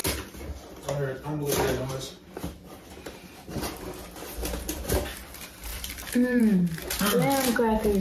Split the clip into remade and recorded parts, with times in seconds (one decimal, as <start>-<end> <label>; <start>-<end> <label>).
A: 0.0-5.7 recorded; 5.7-6.4 remade; 6.4-8.0 recorded